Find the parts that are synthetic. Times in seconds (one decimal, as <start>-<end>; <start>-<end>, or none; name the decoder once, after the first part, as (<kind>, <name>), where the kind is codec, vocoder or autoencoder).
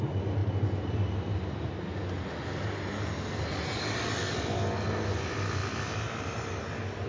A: none